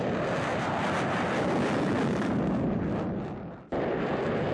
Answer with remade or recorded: recorded